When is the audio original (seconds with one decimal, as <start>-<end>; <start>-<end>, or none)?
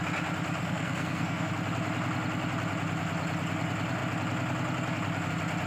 0.0-0.6; 1.5-5.7